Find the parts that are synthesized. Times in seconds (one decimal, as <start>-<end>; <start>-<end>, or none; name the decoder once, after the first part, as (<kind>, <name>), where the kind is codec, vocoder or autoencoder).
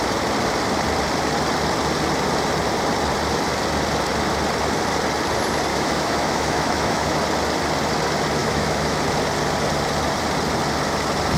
5.7-7.2 (autoencoder, DAC-VAE); 8.4-9.0